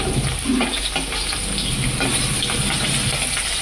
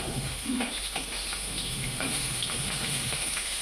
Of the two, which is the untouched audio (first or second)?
first